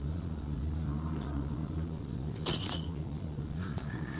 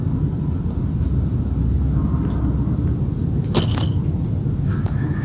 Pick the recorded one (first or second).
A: second